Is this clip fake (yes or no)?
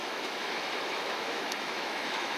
yes